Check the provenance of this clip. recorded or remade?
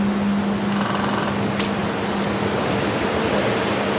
recorded